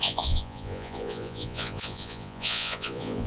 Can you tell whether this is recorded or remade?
remade